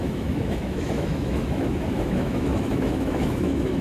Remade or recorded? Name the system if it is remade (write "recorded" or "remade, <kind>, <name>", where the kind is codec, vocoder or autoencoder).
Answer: remade, autoencoder, DAC-VAE